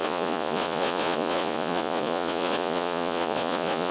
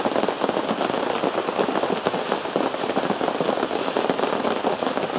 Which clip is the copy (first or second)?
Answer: first